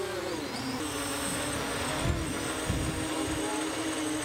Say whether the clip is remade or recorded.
recorded